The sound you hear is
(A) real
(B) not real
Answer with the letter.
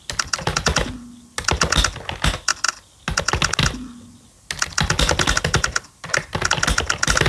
A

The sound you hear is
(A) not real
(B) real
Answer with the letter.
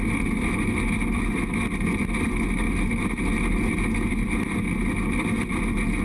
B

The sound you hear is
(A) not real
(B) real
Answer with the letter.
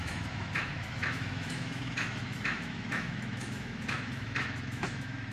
A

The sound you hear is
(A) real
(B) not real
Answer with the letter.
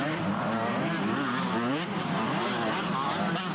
B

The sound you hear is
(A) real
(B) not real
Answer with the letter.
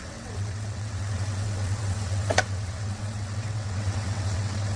B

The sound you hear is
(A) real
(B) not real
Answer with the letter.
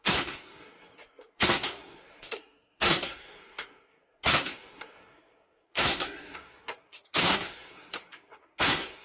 B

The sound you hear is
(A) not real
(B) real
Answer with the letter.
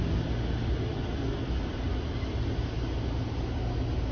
B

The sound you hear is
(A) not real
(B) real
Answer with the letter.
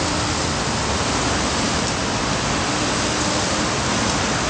B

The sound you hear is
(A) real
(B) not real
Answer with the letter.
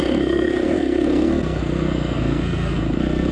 B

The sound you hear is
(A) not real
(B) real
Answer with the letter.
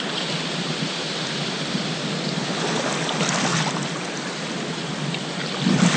A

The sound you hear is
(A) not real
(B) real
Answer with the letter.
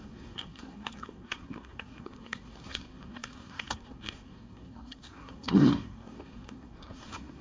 A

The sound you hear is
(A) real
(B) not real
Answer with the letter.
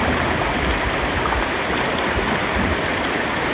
A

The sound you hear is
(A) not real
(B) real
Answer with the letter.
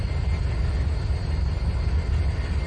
B